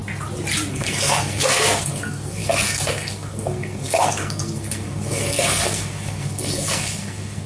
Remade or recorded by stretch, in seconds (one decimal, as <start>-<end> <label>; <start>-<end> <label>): 0.0-0.7 recorded; 0.7-7.5 remade